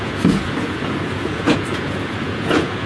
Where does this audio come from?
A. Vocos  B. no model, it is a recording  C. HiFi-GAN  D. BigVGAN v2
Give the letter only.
A